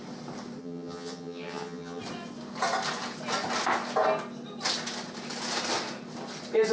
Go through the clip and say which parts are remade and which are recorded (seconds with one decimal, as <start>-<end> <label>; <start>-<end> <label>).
0.0-0.6 recorded; 0.6-2.0 remade; 2.0-6.7 recorded